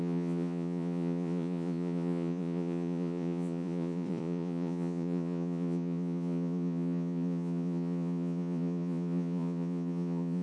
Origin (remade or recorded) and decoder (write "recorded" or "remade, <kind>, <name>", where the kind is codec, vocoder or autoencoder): remade, vocoder, Vocos